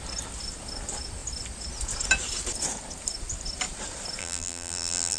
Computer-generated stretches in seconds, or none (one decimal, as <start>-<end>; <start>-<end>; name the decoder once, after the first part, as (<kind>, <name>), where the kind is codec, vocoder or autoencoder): 4.2-5.2 (vocoder, BigVGAN v2)

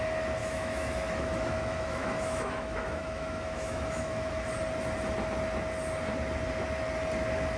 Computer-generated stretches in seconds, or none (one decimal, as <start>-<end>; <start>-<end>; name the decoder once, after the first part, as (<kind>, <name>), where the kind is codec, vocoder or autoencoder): 0.4-4.3 (autoencoder, DAC-VAE)

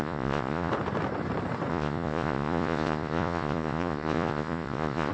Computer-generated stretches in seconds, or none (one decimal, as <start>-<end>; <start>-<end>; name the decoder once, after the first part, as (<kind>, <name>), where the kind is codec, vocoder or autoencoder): 0.0-0.7 (vocoder, Vocos); 1.7-5.1

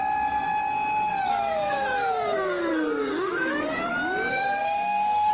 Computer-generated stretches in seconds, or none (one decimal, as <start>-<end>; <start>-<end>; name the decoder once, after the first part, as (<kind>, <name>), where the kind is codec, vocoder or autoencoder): 1.3-3.9 (codec, SNAC); 4.3-5.3

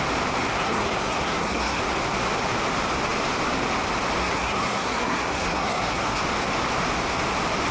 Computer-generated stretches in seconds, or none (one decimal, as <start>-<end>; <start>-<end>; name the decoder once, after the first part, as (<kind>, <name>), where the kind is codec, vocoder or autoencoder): 0.5-1.8 (codec, SNAC); 4.2-6.2

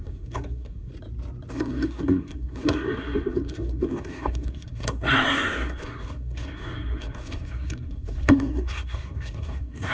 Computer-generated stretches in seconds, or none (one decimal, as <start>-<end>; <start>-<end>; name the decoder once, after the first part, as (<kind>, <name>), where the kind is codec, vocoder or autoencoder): 0.0-0.9 (codec, SNAC); 1.5-9.9